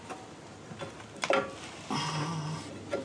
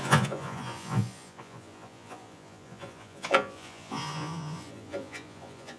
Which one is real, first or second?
first